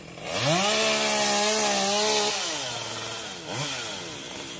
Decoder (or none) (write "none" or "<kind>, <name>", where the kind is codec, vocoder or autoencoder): none